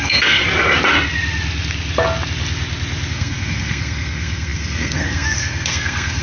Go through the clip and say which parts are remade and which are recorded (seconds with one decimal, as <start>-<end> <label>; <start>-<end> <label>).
0.0-0.4 remade; 0.4-3.1 recorded; 3.1-6.2 remade